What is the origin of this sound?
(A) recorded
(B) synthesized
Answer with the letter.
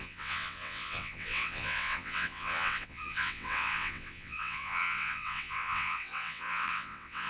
B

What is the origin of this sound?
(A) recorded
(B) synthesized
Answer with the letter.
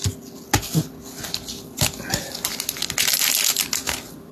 A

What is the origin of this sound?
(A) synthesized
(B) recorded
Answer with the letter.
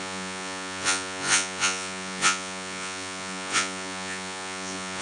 A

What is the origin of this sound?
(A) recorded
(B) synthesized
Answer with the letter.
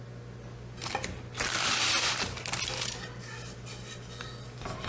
A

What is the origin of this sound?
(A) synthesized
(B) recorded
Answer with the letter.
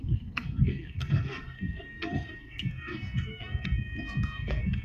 A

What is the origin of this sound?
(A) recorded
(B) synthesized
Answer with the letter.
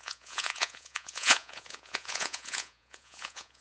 B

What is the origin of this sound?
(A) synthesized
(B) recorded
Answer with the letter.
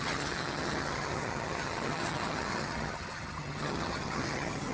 A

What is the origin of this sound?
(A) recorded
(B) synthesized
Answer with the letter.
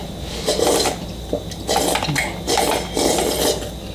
A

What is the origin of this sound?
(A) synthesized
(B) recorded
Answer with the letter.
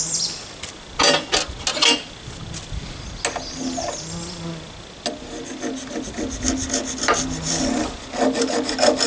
B